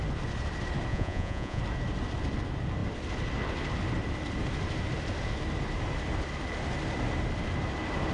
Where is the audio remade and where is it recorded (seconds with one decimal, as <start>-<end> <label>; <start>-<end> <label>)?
0.0-0.9 recorded; 0.9-1.6 remade; 1.6-8.1 recorded